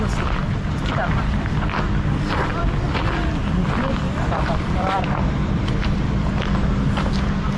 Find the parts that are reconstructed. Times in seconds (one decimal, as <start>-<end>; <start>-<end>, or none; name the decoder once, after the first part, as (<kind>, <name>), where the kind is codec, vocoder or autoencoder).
2.5-6.3 (vocoder, BigVGAN v2)